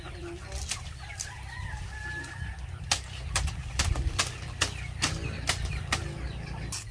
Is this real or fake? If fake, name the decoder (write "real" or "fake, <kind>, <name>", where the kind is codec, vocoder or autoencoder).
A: real